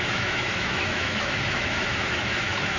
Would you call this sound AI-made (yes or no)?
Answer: yes